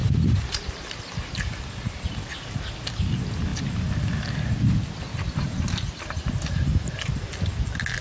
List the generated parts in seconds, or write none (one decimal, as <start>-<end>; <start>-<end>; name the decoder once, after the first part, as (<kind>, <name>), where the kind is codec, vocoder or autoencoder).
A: none